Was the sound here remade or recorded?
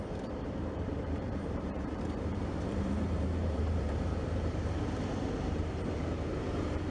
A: remade